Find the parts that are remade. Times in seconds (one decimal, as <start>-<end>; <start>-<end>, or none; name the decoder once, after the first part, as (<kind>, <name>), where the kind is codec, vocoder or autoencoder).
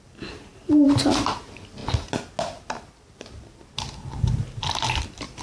none